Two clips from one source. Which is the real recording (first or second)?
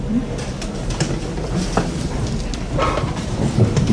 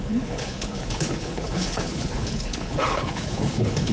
first